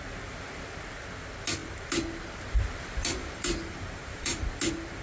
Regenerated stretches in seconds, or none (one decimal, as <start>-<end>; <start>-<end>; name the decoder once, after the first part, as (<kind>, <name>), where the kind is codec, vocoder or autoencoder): 3.2-4.4 (vocoder, BigVGAN v2)